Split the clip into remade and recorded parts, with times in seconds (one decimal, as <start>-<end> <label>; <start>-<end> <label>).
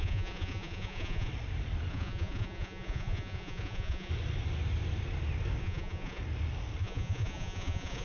0.0-1.3 remade; 1.3-1.9 recorded; 1.9-4.1 remade; 4.1-5.6 recorded; 5.6-6.2 remade; 6.2-6.8 recorded; 6.8-8.0 remade